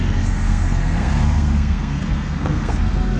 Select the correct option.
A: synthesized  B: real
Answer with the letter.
A